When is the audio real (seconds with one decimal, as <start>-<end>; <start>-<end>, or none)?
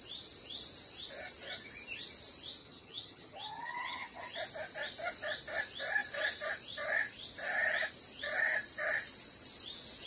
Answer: 0.0-2.6; 4.2-10.1